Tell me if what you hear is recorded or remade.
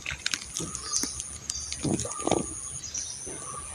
recorded